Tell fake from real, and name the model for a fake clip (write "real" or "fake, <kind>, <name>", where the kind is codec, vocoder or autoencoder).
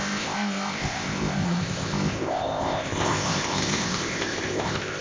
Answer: fake, codec, ZipCodec